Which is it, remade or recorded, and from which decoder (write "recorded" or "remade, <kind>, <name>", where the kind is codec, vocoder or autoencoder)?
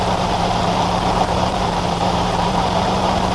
remade, vocoder, BigVGAN v2